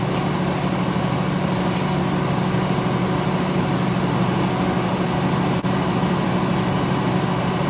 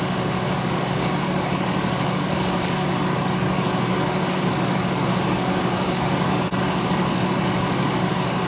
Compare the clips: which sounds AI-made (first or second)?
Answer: second